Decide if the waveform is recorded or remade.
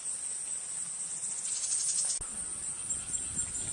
recorded